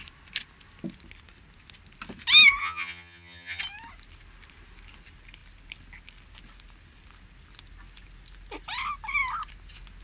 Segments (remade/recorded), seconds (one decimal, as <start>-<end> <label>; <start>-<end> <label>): 0.0-2.6 recorded; 2.6-3.6 remade; 3.6-10.0 recorded